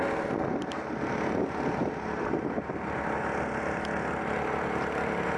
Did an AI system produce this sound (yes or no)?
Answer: no